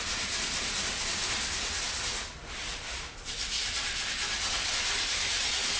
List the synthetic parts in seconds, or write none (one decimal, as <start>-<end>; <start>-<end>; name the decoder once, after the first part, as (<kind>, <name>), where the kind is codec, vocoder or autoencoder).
none